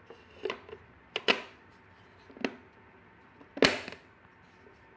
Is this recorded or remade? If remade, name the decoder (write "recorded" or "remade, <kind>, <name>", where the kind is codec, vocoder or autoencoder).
recorded